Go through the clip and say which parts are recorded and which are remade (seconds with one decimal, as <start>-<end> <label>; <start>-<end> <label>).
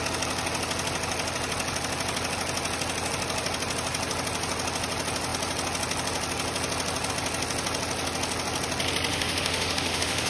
0.0-9.1 recorded; 9.1-10.3 remade